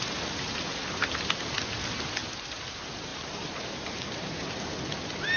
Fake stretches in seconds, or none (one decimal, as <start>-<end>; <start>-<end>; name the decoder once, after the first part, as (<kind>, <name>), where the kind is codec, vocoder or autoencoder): 3.1-4.7 (vocoder, BigVGAN v2)